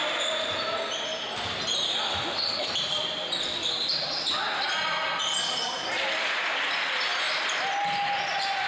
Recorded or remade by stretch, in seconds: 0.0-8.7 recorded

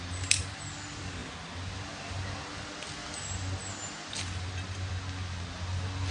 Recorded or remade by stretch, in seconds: 0.0-6.1 recorded

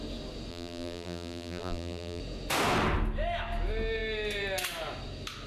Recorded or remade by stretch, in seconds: 0.0-0.5 recorded; 0.5-2.2 remade; 2.2-5.5 recorded

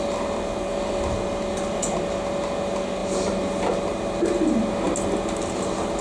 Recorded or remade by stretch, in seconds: 0.0-3.0 recorded; 3.0-4.6 remade; 4.6-6.0 recorded

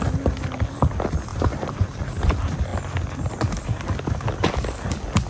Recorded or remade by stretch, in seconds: 0.0-1.3 recorded; 1.3-2.3 remade; 2.3-5.3 recorded

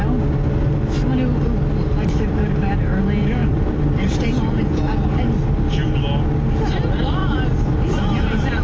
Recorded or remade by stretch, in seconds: 0.0-1.9 recorded; 1.9-2.7 remade; 2.7-3.4 recorded; 3.4-4.0 remade; 4.0-8.6 recorded

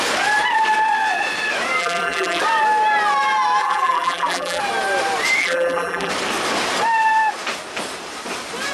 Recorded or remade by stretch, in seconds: 0.0-1.8 recorded; 1.8-2.4 remade; 2.4-3.6 recorded; 3.6-4.6 remade; 4.6-5.4 recorded; 5.4-6.1 remade; 6.1-8.7 recorded